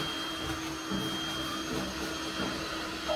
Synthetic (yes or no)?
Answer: no